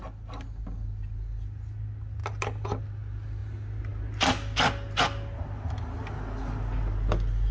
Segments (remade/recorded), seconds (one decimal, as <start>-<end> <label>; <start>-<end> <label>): 0.0-7.5 recorded